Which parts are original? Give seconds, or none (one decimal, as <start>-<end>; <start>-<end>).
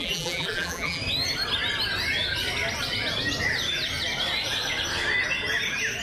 1.0-6.0